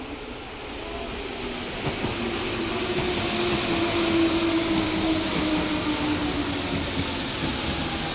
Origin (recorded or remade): recorded